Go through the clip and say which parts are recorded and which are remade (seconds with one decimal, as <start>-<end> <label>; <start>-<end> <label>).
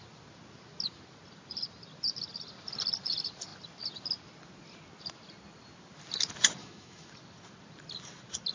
0.0-6.6 recorded; 6.6-7.1 remade; 7.1-8.5 recorded